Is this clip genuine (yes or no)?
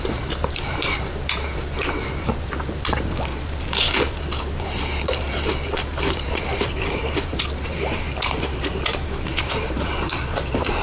no